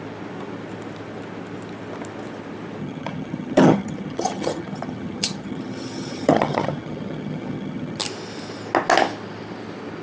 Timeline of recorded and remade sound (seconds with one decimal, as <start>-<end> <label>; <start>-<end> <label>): 0.0-2.8 recorded; 2.8-8.0 remade; 8.0-10.0 recorded